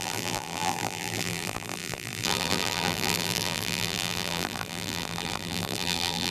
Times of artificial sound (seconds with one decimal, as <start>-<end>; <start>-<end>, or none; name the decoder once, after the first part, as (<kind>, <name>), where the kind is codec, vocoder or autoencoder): 0.0-6.3 (vocoder, BigVGAN v2)